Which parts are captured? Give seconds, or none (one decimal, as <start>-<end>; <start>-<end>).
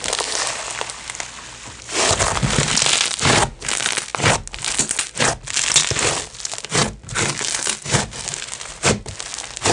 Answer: 0.0-9.7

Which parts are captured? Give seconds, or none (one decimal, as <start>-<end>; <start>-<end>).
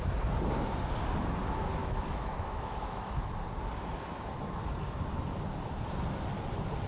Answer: 0.0-1.8; 3.3-6.9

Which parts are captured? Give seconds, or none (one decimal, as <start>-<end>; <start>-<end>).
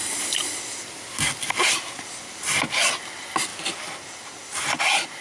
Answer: 0.0-5.2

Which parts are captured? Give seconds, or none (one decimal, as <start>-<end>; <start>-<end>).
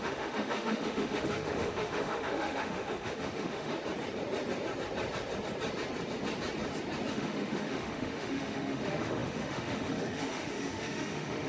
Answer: 3.7-7.1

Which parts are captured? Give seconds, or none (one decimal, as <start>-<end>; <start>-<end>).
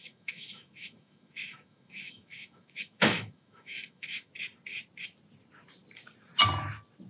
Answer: 4.3-7.1